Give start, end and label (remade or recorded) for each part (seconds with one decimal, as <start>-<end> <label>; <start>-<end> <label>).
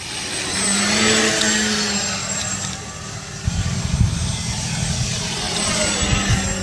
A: 0.0-2.2 recorded; 2.2-5.8 remade; 5.8-6.6 recorded